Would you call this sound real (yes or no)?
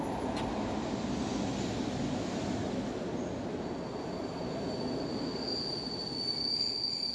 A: yes